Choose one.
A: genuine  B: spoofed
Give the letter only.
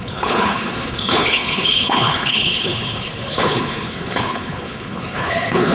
B